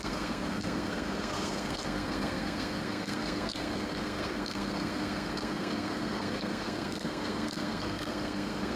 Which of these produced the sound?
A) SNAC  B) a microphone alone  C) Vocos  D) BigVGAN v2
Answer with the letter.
A